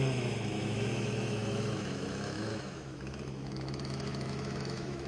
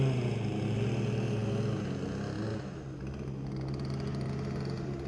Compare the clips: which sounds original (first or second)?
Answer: second